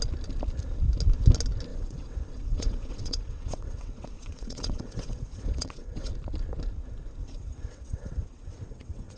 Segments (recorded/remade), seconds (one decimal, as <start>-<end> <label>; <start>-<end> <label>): 0.0-1.7 recorded; 1.7-6.1 remade; 6.1-7.2 recorded; 7.2-9.2 remade